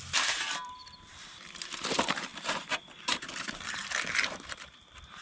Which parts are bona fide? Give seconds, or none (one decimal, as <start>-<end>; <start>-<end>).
2.3-3.0